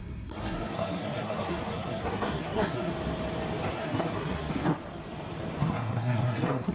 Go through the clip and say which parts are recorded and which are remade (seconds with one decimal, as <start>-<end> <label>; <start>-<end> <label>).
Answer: 0.0-2.9 remade; 2.9-3.7 recorded; 3.7-4.7 remade; 4.7-5.6 recorded; 5.6-6.7 remade